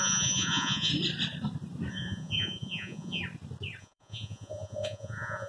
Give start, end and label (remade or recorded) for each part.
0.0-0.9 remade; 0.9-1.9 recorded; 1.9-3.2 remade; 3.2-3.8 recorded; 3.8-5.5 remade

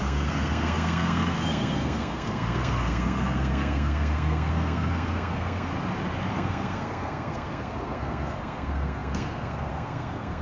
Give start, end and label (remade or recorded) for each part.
0.0-5.7 remade; 5.7-6.3 recorded; 6.3-10.4 remade